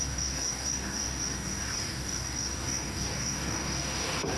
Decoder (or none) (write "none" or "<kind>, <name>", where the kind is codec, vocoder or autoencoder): codec, DAC